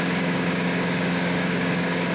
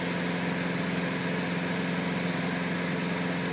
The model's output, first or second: first